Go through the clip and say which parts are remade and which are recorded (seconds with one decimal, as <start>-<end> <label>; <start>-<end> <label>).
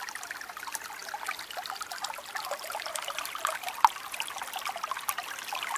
0.0-5.8 recorded